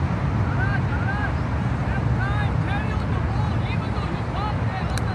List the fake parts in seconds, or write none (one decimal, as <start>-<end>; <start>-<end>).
none